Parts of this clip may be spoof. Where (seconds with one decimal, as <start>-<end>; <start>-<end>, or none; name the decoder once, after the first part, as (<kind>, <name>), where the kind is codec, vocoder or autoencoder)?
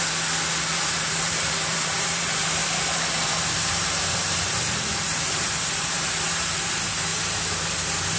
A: 0.7-2.6 (vocoder, BigVGAN v2); 3.7-7.1